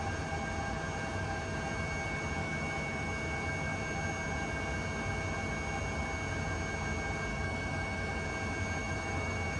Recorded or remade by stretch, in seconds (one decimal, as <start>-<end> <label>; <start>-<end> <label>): 0.0-2.4 recorded; 2.4-3.1 remade; 3.1-7.3 recorded; 7.3-8.1 remade; 8.1-8.8 recorded; 8.8-9.6 remade

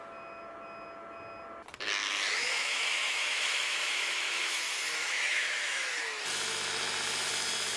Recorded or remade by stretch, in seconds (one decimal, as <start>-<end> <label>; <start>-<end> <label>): 0.0-2.4 recorded; 2.4-5.9 remade; 5.9-7.8 recorded

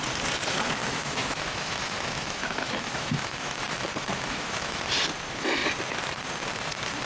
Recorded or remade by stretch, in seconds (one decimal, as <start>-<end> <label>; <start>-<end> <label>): 0.0-0.8 recorded; 0.8-4.8 remade; 4.8-7.1 recorded

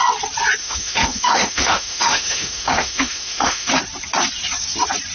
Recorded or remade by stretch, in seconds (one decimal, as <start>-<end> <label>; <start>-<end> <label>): 0.0-0.6 recorded; 0.6-3.7 remade; 3.7-5.1 recorded

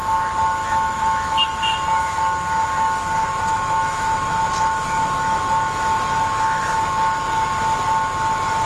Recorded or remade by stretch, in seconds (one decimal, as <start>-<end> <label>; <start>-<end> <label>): 0.0-0.6 recorded; 0.6-1.6 remade; 1.6-3.3 recorded; 3.3-6.6 remade; 6.6-8.7 recorded